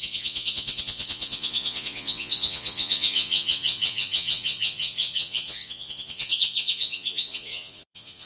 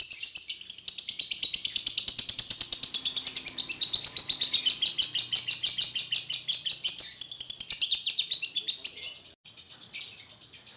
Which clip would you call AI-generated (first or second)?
first